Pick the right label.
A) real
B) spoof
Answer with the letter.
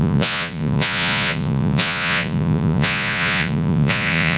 B